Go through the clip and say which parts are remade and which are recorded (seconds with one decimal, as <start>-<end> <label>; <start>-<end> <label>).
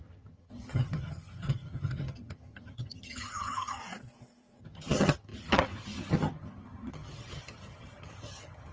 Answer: 0.0-3.8 remade; 3.8-4.6 recorded; 4.6-8.7 remade